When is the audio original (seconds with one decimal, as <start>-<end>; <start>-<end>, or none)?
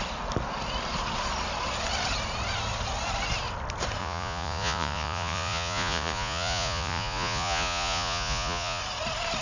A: 0.0-4.0; 8.8-9.4